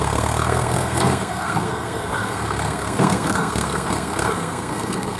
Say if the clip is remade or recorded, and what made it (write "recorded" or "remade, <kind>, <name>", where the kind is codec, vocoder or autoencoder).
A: remade, codec, SNAC